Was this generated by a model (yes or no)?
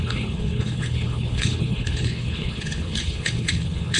yes